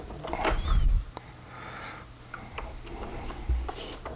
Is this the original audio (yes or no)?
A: yes